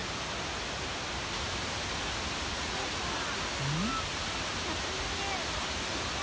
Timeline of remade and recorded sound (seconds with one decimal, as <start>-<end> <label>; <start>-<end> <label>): 0.0-2.5 recorded; 2.5-3.0 remade; 3.0-6.2 recorded